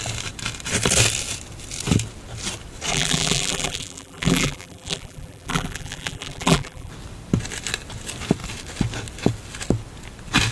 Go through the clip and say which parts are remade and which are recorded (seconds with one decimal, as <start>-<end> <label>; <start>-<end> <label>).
0.0-2.9 recorded; 2.9-6.9 remade; 6.9-10.5 recorded